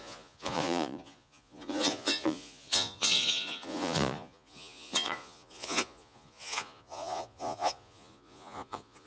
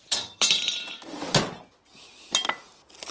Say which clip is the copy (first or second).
first